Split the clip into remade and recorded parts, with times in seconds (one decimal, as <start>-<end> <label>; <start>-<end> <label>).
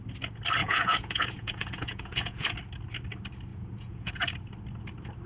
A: 0.0-0.6 recorded; 0.6-2.5 remade; 2.5-3.5 recorded; 3.5-4.1 remade; 4.1-5.3 recorded